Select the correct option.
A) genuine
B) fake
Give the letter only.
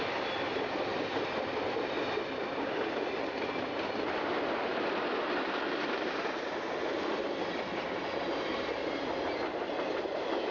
A